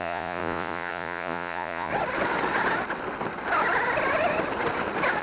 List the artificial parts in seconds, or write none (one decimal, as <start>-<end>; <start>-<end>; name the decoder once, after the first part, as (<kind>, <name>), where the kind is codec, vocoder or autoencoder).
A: 0.0-1.9 (vocoder, Vocos)